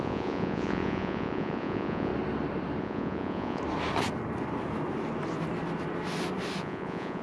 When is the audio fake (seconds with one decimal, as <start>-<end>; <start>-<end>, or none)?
0.0-2.1; 2.8-3.6; 6.6-7.2